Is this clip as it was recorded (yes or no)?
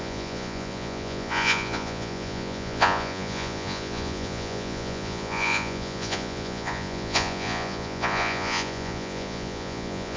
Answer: no